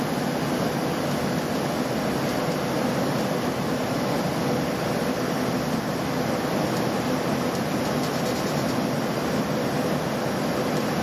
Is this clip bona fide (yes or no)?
yes